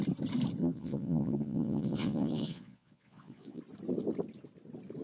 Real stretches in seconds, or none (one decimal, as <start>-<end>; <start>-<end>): 0.0-0.6; 3.6-5.0